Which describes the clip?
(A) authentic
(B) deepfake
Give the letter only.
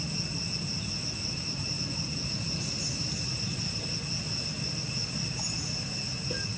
A